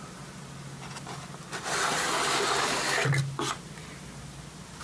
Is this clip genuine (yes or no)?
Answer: yes